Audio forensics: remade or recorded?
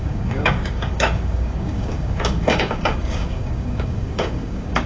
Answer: remade